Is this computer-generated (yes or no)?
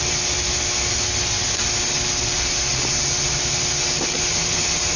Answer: no